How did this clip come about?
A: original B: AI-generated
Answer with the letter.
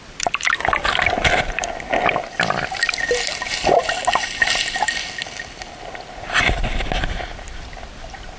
A